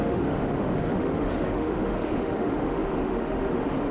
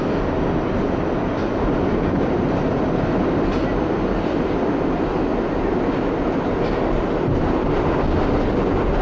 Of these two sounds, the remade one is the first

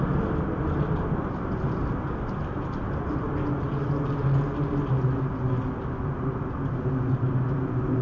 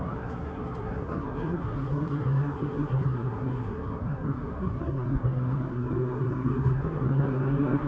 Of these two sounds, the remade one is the second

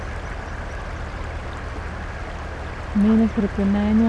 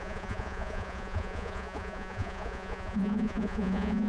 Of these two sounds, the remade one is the second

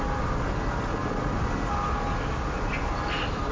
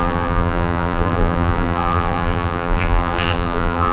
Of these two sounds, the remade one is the second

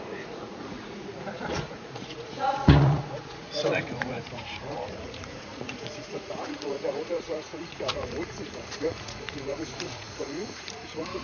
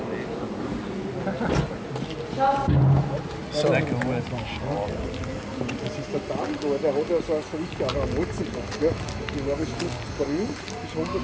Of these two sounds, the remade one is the first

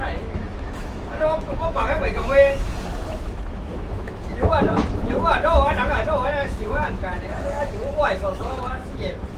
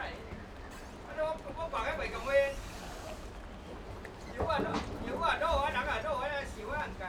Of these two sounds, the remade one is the first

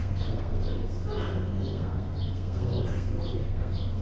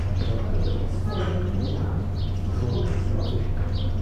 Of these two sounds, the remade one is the first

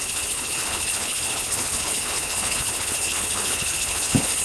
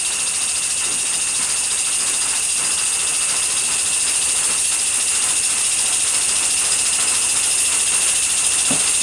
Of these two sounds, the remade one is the first